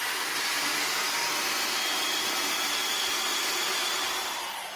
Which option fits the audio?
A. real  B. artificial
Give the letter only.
A